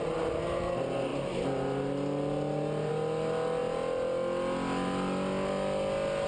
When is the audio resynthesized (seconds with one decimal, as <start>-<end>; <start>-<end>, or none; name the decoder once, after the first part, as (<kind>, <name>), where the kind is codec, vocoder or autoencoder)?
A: none